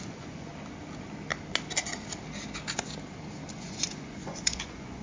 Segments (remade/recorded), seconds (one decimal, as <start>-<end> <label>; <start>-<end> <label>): 0.0-0.5 remade; 0.5-3.5 recorded; 3.5-5.0 remade